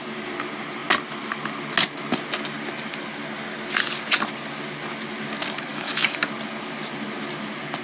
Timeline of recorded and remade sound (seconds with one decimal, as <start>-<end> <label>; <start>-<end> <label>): 0.0-5.7 recorded; 5.7-6.2 remade; 6.2-7.8 recorded